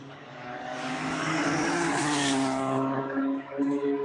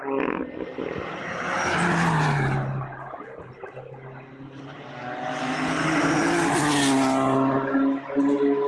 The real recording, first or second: second